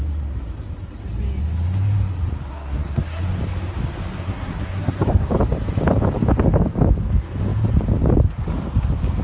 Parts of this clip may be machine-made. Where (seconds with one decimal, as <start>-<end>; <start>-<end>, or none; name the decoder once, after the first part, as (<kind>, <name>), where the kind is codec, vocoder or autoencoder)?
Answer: 2.5-3.2 (codec, SNAC); 4.1-5.3